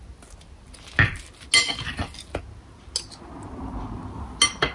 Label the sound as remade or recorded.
recorded